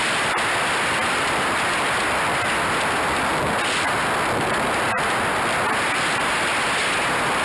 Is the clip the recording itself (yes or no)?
yes